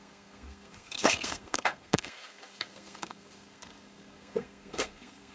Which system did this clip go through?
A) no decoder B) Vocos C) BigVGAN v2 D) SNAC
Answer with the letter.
D